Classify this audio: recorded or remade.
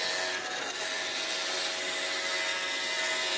recorded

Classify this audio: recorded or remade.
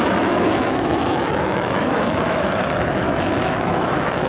remade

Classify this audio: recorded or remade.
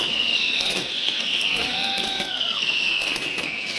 remade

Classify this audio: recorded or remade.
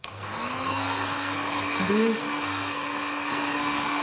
remade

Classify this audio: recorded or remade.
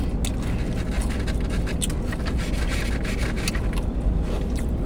recorded